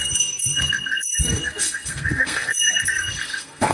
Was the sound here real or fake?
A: fake